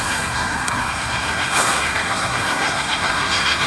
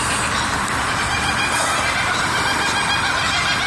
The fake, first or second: first